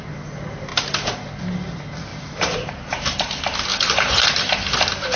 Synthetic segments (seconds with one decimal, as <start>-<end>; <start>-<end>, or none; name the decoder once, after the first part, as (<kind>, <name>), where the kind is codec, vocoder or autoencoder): 2.1-2.7 (vocoder, BigVGAN v2); 3.7-4.5